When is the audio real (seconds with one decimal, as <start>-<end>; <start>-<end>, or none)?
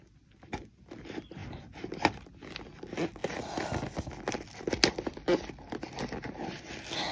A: 0.0-7.1